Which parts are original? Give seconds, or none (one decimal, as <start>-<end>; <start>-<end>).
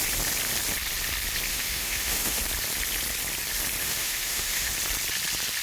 0.0-1.5; 2.4-3.8; 4.7-5.6